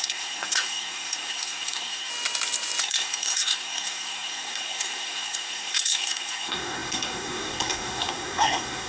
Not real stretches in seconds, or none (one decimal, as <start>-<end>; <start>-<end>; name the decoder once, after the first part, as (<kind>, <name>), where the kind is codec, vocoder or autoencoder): 0.0-2.1 (codec, SNAC); 2.8-8.9